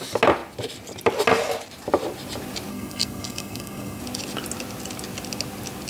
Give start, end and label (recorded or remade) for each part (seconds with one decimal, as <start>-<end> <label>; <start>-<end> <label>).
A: 0.0-2.7 recorded; 2.7-4.0 remade; 4.0-5.9 recorded